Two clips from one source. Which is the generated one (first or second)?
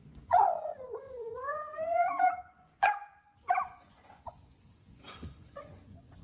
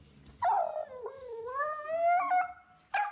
first